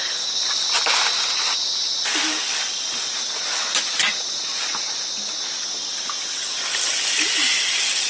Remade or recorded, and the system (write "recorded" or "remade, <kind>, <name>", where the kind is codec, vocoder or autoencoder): recorded